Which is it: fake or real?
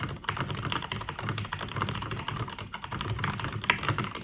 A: real